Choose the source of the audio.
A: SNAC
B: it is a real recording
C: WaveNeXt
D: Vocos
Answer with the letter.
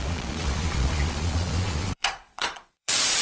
D